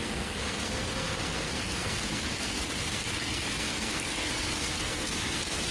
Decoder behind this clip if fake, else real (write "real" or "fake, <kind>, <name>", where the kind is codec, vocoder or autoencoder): fake, codec, SNAC